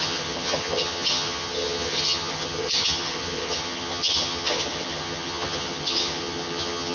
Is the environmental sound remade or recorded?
remade